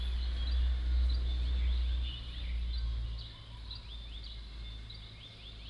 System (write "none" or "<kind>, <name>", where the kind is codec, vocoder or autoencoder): none